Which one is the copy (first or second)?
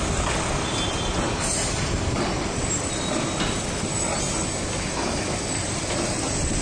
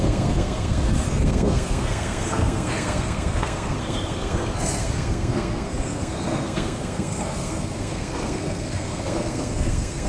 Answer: second